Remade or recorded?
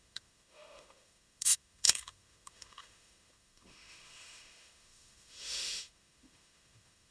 remade